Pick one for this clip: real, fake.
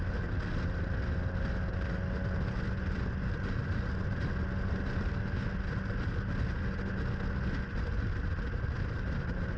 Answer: real